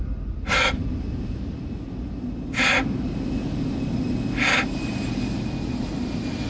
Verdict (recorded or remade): recorded